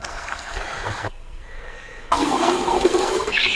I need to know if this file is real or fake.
fake